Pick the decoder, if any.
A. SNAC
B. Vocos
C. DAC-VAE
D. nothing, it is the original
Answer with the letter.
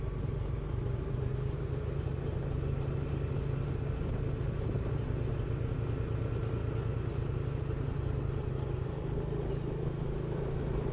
D